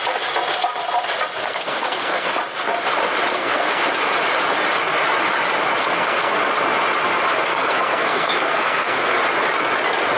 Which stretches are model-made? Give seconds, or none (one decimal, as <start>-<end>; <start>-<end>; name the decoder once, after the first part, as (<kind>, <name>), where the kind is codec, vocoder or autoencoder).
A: 1.4-2.3 (codec, SNAC); 3.3-3.8; 5.8-6.4; 7.5-9.2